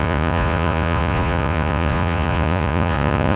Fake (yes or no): yes